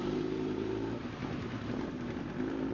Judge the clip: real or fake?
fake